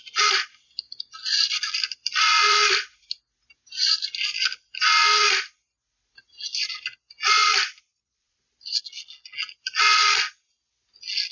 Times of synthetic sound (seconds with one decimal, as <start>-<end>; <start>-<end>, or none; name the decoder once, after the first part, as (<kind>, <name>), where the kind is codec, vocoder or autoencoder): 2.3-3.2 (vocoder, BigVGAN v2); 7.4-8.8